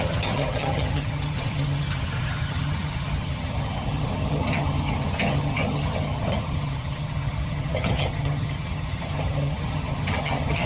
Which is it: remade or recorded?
remade